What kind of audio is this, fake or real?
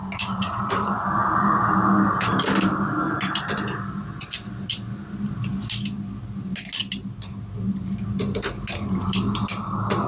real